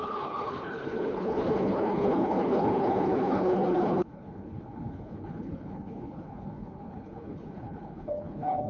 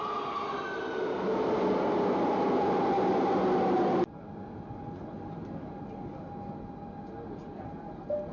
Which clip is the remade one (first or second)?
first